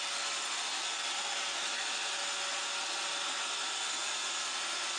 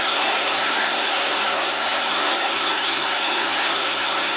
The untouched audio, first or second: first